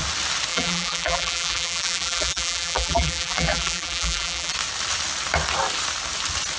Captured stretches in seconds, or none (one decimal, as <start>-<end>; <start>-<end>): 0.0-0.5; 4.5-6.6

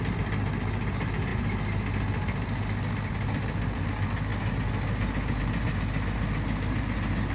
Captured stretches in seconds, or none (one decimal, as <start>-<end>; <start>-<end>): 0.0-7.3

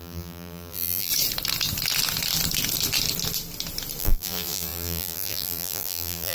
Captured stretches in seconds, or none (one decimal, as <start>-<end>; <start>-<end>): 1.1-4.0

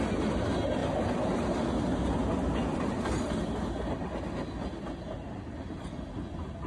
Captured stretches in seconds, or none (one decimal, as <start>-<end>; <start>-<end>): 0.0-6.7

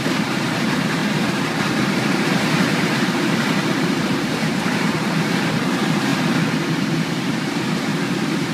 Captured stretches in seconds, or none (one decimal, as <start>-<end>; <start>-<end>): 1.0-1.7; 6.1-7.2; 7.9-8.5

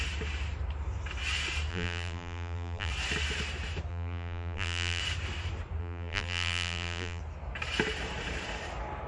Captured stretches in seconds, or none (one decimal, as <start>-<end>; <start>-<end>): 0.0-1.7; 2.9-3.9; 5.0-5.8; 7.2-9.1